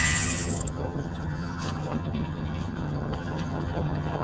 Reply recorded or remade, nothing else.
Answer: remade